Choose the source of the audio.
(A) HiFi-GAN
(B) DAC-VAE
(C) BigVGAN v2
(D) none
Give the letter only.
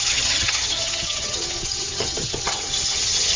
A